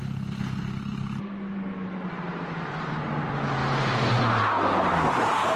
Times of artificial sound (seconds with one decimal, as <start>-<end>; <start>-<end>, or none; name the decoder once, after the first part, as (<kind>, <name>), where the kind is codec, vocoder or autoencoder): 3.6-4.2 (vocoder, BigVGAN v2)